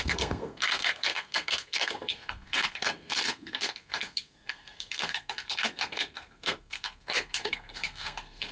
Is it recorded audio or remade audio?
remade